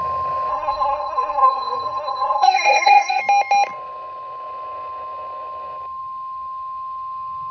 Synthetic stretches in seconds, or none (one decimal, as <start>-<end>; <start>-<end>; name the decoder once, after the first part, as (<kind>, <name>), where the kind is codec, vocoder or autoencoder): 0.5-3.2 (codec, SNAC)